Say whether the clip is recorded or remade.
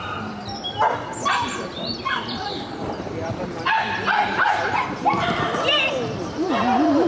remade